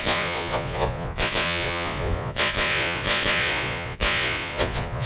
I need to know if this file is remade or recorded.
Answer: remade